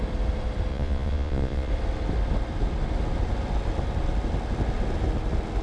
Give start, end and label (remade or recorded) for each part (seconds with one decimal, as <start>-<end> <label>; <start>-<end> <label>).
0.0-0.7 recorded; 0.7-1.7 remade; 1.7-5.6 recorded